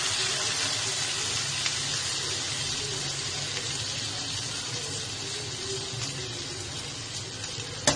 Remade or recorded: recorded